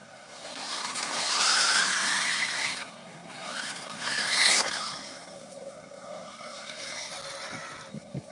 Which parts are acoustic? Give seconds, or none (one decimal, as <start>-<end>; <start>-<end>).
7.1-7.9